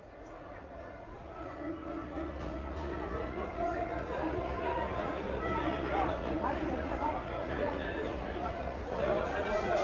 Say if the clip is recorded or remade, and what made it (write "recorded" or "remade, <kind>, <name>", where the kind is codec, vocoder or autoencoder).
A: remade, vocoder, Vocos